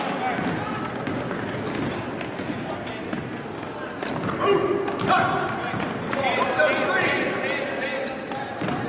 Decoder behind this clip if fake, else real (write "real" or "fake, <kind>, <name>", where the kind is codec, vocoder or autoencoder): real